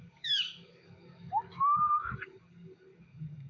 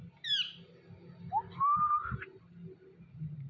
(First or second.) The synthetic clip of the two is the first